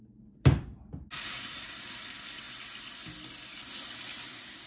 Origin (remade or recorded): recorded